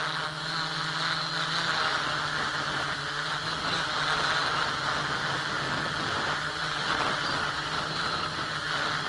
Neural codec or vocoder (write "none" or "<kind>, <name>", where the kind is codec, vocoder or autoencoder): none